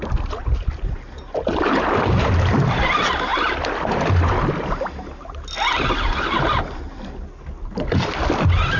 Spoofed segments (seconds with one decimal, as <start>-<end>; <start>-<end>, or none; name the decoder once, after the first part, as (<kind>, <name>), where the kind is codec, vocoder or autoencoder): none

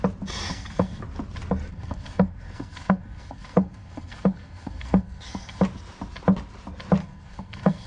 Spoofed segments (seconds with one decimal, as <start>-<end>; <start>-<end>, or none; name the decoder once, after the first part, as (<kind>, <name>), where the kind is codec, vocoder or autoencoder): 0.5-1.0 (codec, SNAC); 1.7-5.6; 7.0-7.9